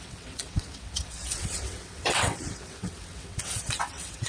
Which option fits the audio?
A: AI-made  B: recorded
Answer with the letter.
A